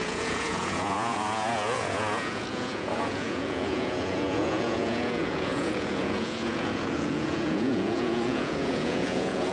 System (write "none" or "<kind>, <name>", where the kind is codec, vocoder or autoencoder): vocoder, Vocos